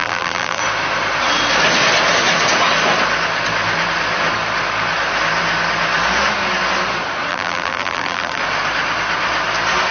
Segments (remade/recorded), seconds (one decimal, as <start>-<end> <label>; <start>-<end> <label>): 0.0-0.6 remade; 0.6-7.3 recorded; 7.3-8.4 remade; 8.4-9.9 recorded